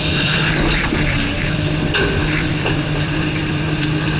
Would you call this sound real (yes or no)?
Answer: no